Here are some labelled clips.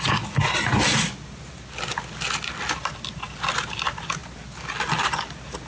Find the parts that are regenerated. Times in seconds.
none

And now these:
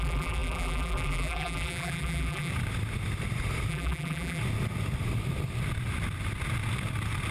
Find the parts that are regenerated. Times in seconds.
0.0-2.5 (vocoder, BigVGAN v2); 3.7-4.4

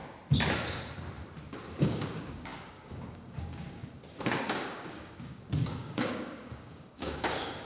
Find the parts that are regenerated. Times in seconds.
1.5-7.6 (codec, DAC)

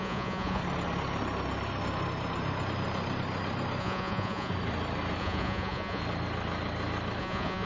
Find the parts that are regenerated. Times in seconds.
0.0-0.6 (vocoder, Vocos); 3.8-4.5; 5.2-6.0; 7.2-7.7

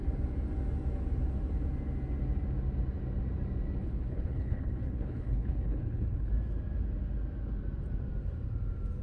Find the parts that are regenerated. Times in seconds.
3.8-6.3 (codec, HILCodec)

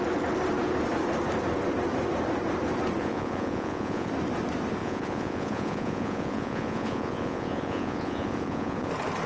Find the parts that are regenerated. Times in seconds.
3.0-4.1 (vocoder, Vocos); 4.8-8.9